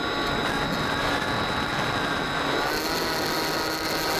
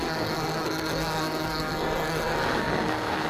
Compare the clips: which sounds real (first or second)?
first